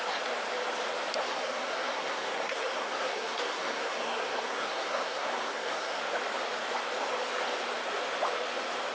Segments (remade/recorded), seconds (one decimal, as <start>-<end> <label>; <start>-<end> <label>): 0.0-1.2 recorded; 1.2-6.0 remade; 6.0-8.9 recorded